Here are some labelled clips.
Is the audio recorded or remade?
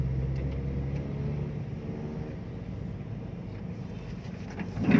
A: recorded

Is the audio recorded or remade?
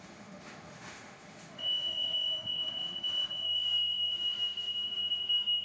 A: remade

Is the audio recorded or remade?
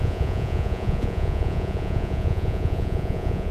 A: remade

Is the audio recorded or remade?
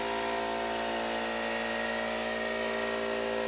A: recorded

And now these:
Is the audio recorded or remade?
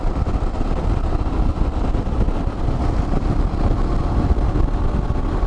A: recorded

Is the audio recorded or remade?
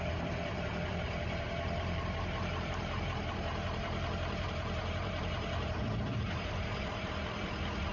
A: remade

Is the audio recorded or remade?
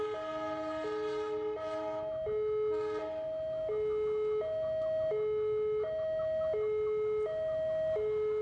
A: recorded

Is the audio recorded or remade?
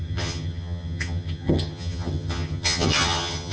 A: remade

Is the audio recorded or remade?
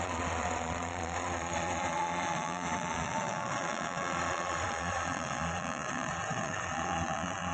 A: remade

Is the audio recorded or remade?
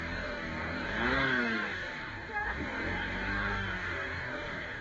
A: remade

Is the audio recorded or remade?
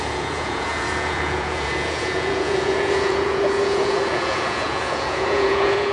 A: remade